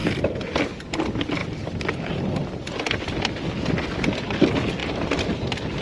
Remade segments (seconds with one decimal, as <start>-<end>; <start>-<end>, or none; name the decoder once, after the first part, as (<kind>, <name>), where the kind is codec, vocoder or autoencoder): 0.0-0.6 (vocoder, BigVGAN v2); 1.4-3.5; 4.8-5.8